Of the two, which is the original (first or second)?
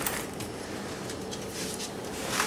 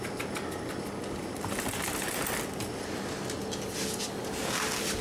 second